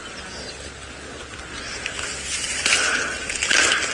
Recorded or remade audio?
recorded